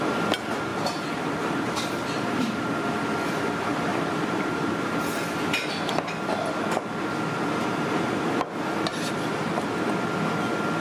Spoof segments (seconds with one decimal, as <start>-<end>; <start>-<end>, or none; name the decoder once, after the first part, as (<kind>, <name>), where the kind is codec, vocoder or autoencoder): 0.7-2.7 (vocoder, BigVGAN v2); 3.9-5.0; 8.9-9.7